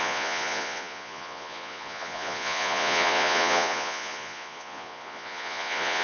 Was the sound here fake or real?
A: fake